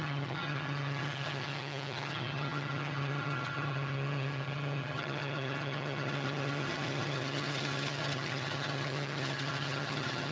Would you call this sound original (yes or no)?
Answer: no